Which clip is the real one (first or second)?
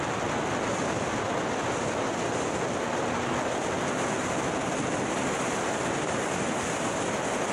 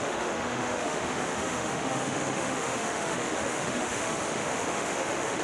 first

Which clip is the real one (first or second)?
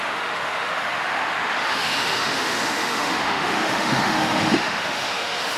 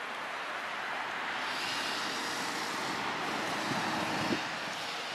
second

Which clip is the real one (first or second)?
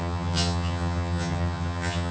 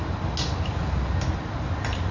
second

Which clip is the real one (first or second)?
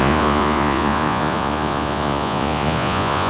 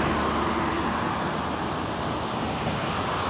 second